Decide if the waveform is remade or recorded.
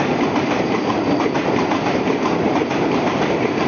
recorded